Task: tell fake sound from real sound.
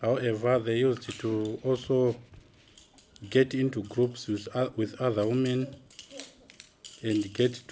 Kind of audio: real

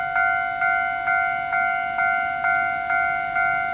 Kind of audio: real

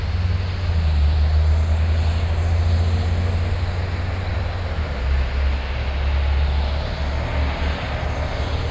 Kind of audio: real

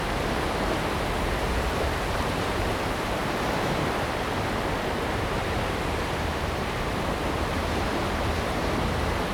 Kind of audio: fake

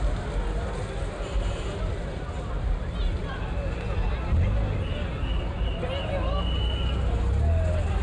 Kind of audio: real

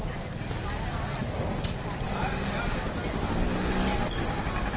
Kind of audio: real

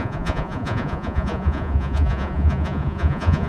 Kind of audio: fake